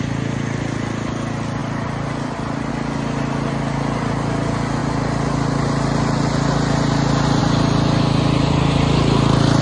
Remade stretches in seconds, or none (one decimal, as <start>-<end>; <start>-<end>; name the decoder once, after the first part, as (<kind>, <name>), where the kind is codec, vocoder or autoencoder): none